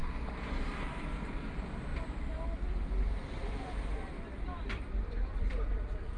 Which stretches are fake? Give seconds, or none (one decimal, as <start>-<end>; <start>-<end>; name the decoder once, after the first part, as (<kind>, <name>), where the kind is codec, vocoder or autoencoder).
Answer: 1.0-6.2 (vocoder, BigVGAN v2)